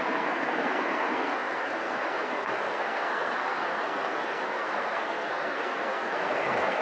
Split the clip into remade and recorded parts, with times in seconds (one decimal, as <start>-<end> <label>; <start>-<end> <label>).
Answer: 0.0-6.8 remade